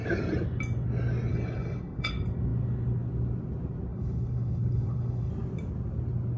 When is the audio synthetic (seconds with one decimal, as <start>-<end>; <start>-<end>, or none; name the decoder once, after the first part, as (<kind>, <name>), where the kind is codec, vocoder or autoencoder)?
1.3-2.1 (codec, HILCodec); 3.9-5.3